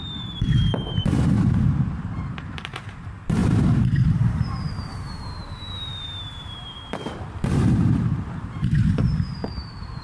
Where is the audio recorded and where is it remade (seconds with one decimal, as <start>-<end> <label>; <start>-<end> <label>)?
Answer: 0.0-10.0 remade